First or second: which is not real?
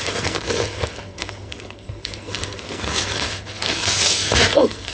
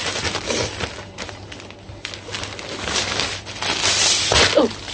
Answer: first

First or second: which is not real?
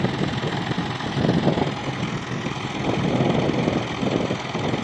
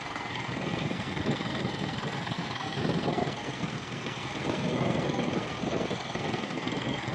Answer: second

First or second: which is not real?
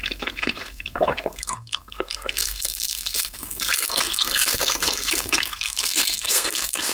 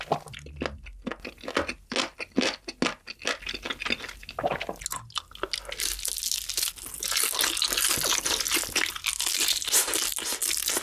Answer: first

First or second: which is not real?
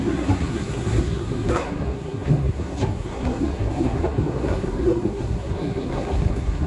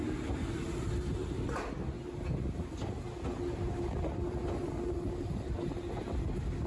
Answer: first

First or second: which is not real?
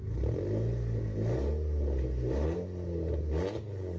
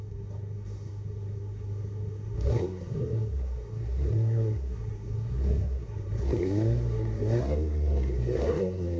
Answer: second